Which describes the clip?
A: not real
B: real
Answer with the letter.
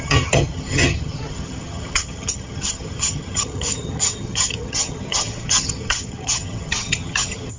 A